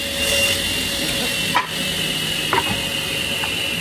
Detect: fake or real real